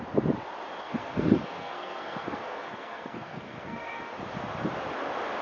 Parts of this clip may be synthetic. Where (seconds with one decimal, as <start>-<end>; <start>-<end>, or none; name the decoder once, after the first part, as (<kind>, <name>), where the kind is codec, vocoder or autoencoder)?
0.8-4.0 (codec, SNAC)